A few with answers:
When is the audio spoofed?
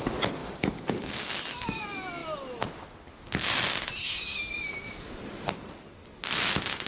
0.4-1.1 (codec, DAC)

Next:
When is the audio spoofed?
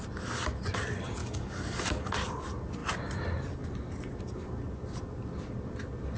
1.2-2.1 (codec, DAC)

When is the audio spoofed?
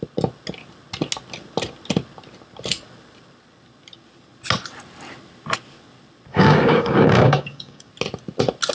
6.3-7.9 (codec, DAC)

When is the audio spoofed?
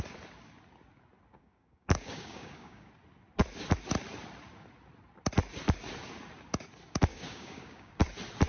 1.3-2.9 (codec, DAC); 7.1-7.9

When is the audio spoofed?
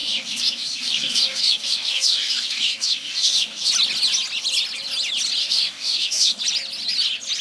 0.0-3.7 (codec, DAC); 5.4-6.4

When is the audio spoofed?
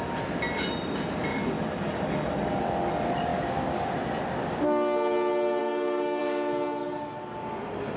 1.3-2.6 (codec, DAC); 5.6-6.2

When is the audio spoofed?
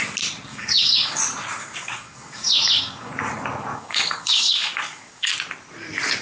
0.5-1.2 (codec, DAC); 1.6-3.1; 3.7-5.3